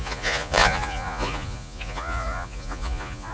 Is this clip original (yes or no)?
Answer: no